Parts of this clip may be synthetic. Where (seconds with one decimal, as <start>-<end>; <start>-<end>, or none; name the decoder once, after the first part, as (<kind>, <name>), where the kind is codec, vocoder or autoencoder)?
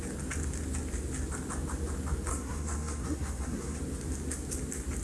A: 2.3-3.8 (codec, SNAC)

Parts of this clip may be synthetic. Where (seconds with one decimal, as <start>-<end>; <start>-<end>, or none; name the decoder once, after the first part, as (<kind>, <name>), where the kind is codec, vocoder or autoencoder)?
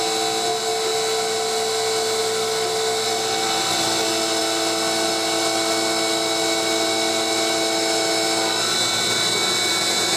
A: none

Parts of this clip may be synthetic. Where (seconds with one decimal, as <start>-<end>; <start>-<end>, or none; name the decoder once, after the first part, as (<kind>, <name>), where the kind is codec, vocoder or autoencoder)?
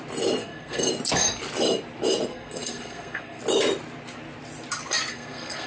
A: 0.4-0.9 (codec, SNAC); 2.3-3.4; 5.1-5.7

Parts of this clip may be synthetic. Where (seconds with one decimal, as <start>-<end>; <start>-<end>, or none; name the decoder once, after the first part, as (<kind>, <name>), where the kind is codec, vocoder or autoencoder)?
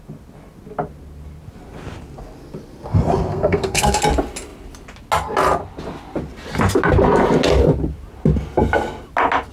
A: 3.3-4.0 (codec, SNAC)